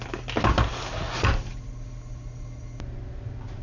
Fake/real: real